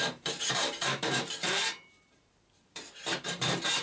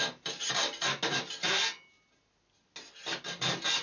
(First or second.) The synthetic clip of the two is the first